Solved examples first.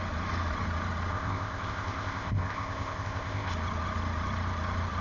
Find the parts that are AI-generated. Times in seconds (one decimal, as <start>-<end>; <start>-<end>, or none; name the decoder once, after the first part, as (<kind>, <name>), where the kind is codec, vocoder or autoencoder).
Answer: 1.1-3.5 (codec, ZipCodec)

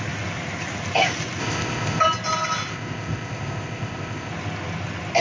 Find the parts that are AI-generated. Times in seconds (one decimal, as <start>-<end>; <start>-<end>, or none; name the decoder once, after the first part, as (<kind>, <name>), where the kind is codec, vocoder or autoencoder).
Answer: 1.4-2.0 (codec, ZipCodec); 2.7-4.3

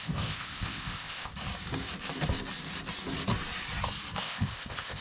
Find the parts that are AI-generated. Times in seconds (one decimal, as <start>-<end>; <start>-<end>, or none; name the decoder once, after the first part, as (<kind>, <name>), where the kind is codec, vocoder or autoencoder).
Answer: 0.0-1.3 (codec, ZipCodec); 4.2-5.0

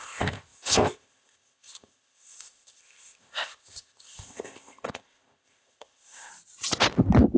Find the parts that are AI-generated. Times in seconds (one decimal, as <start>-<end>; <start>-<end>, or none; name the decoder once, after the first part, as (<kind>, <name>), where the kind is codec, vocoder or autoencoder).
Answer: 0.0-6.3 (codec, ZipCodec)

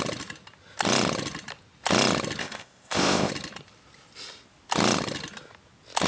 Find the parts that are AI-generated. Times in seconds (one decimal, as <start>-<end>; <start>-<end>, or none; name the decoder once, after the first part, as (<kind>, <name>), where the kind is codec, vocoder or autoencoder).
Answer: 2.4-3.3 (codec, ZipCodec)

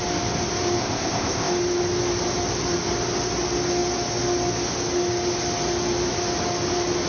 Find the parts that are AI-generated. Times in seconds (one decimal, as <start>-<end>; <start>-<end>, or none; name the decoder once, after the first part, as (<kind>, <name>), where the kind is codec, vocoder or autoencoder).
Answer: 0.8-1.5 (codec, ZipCodec)

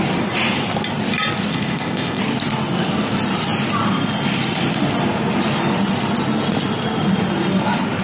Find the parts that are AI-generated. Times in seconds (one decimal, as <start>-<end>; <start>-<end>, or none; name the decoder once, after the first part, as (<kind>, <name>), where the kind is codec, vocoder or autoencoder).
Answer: 1.5-2.2 (codec, ZipCodec)

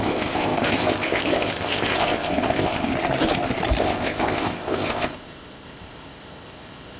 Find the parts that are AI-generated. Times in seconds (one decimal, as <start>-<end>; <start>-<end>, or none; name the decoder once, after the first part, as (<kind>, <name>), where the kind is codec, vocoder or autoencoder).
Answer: 0.0-2.9 (codec, ZipCodec); 3.8-7.0